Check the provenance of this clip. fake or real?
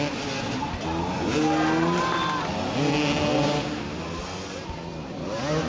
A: real